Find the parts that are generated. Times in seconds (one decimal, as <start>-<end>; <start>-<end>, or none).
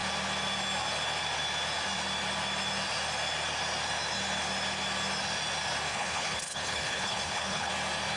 5.9-7.7